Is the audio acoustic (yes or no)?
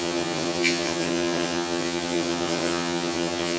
no